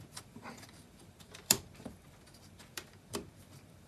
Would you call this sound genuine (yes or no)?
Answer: no